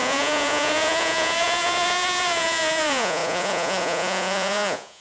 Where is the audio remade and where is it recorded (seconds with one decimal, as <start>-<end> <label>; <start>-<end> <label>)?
0.0-5.0 remade